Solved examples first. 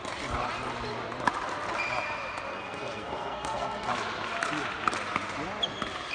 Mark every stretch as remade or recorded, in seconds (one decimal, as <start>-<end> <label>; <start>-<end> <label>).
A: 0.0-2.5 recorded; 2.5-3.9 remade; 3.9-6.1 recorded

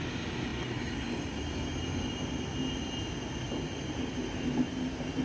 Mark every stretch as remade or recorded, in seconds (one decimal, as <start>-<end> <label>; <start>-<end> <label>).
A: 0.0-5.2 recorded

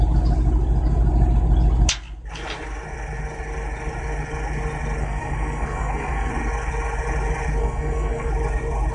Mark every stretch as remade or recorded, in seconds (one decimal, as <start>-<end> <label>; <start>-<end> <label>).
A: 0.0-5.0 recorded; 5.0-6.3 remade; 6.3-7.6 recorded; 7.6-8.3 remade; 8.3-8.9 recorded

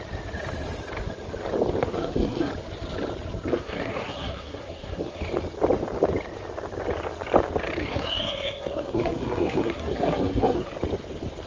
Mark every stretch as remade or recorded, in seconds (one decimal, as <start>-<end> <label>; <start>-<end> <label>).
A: 0.0-1.8 recorded; 1.8-2.5 remade; 2.5-3.5 recorded; 3.5-5.2 remade; 5.2-7.8 recorded; 7.8-10.7 remade; 10.7-11.5 recorded

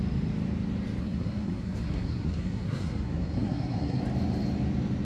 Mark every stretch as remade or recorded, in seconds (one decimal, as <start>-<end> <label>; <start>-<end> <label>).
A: 0.0-1.0 recorded; 1.0-4.0 remade; 4.0-5.0 recorded